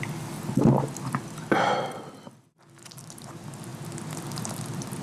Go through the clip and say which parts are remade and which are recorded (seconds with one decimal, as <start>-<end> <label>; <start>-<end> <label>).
0.0-5.0 recorded